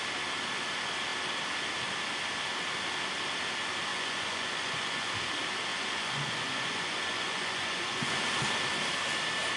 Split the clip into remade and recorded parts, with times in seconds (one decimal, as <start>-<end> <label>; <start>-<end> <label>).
0.0-3.9 recorded; 3.9-5.1 remade; 5.1-5.7 recorded; 5.7-8.3 remade; 8.3-9.6 recorded